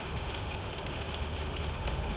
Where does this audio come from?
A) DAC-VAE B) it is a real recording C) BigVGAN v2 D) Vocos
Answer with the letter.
A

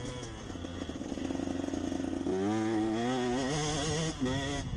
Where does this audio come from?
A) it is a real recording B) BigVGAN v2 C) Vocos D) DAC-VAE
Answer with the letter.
A